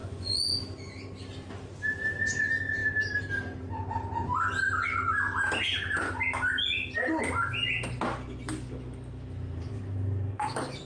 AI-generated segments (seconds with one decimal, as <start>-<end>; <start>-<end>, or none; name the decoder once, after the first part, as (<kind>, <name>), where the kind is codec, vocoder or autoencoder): 0.0-0.6 (vocoder, Vocos)